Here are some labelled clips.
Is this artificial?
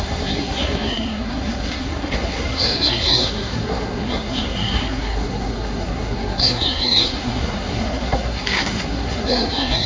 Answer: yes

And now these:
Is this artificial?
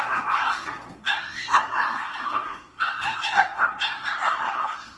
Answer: yes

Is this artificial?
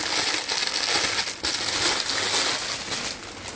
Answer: no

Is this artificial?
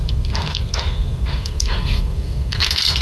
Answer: yes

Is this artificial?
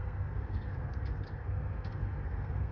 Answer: yes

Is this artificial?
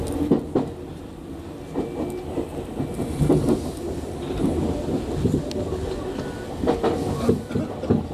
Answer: no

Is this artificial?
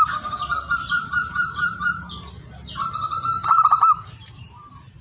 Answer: no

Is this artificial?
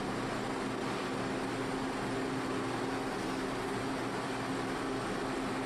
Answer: no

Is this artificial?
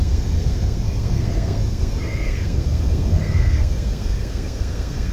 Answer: yes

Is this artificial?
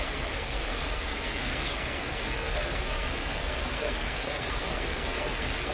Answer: yes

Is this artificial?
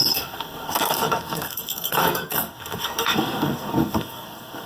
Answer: yes